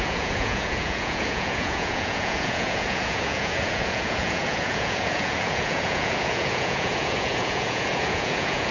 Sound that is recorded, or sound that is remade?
remade